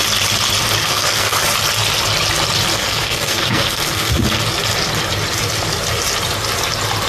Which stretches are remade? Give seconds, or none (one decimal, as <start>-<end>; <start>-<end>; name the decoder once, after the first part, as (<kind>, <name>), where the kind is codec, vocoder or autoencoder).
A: 0.8-1.4 (codec, SNAC); 2.7-4.4